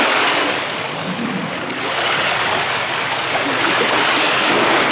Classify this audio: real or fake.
fake